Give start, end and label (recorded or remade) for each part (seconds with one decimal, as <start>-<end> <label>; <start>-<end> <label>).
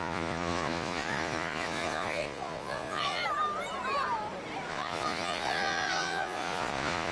0.0-3.2 remade; 3.2-4.7 recorded; 4.7-7.1 remade